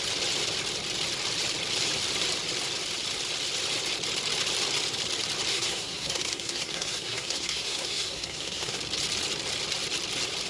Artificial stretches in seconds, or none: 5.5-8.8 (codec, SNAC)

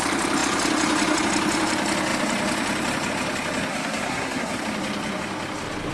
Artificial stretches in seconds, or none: 3.7-4.6 (codec, SNAC)